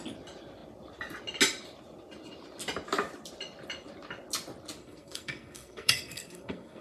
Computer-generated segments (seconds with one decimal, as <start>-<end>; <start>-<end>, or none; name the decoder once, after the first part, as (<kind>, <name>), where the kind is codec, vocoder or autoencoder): 4.8-6.8 (codec, SNAC)